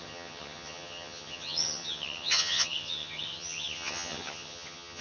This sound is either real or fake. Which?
fake